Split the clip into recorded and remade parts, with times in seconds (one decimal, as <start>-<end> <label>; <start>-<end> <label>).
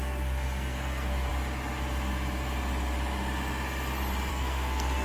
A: 0.0-1.3 remade; 1.3-4.3 recorded; 4.3-5.0 remade